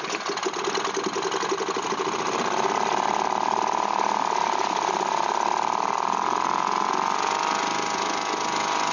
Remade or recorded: recorded